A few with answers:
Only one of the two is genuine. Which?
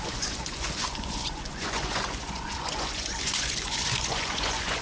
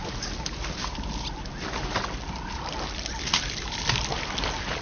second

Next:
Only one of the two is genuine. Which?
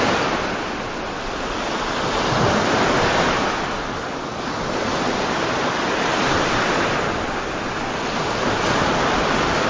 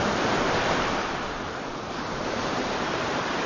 first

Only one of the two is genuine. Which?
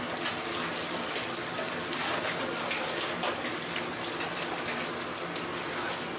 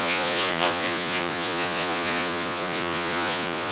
first